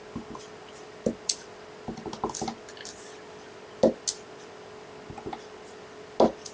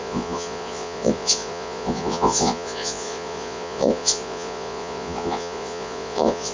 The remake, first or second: second